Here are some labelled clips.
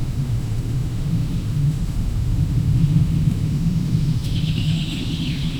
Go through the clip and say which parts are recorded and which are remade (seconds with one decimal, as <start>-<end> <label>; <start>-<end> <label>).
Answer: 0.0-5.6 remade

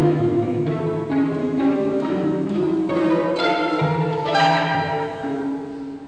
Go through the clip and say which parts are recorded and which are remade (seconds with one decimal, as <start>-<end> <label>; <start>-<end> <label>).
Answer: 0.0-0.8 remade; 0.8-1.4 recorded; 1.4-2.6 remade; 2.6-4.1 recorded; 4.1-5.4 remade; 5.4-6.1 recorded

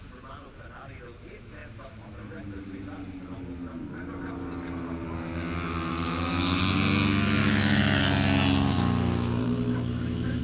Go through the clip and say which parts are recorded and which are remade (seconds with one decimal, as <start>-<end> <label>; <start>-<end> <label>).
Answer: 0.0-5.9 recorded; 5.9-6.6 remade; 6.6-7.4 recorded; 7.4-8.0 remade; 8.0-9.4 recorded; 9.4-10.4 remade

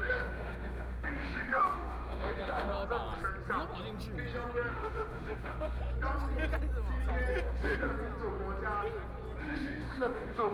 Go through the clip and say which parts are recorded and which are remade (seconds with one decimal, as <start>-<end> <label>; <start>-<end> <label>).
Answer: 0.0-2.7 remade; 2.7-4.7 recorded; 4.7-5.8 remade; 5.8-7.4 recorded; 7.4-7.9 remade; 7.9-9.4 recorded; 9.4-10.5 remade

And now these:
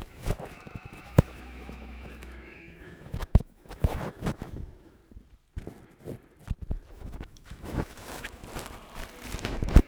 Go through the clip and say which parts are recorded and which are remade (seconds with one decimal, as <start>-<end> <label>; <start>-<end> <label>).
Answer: 0.0-5.0 remade; 5.0-6.9 recorded; 6.9-8.4 remade; 8.4-9.4 recorded; 9.4-9.9 remade